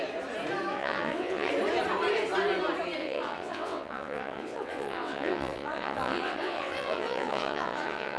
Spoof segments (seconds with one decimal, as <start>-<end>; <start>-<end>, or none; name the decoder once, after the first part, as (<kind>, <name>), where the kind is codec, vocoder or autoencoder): 0.7-1.5 (vocoder, WaveNeXt); 3.0-8.2